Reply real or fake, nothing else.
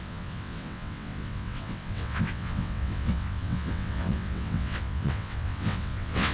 fake